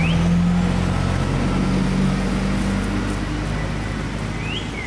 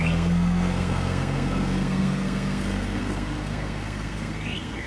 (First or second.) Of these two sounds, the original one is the first